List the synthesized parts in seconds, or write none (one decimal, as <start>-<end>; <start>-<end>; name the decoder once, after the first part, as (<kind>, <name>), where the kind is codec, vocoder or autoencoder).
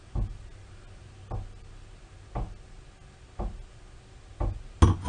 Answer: none